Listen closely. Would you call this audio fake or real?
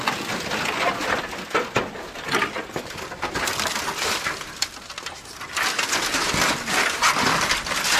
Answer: real